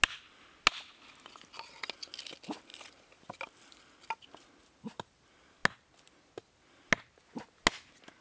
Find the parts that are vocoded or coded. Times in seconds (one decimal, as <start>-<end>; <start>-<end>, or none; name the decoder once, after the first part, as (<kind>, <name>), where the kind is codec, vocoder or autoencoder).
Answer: none